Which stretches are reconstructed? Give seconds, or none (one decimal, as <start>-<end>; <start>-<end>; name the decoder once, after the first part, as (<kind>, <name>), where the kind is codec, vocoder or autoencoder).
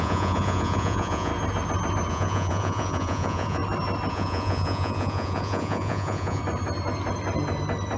0.0-1.3 (vocoder, Vocos); 2.1-3.6; 4.1-6.4